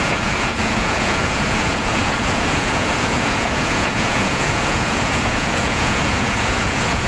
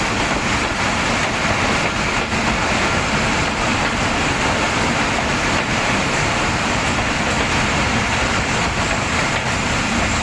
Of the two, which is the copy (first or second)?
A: first